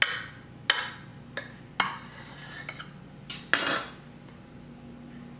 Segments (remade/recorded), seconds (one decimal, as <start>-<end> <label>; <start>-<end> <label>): 0.0-5.4 recorded